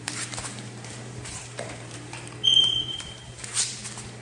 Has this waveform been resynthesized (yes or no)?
yes